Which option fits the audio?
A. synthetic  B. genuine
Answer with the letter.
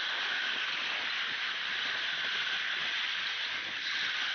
B